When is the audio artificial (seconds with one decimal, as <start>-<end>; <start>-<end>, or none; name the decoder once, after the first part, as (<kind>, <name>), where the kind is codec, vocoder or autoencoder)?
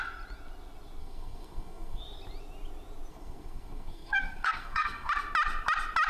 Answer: 1.0-2.0 (codec, SNAC); 3.1-5.1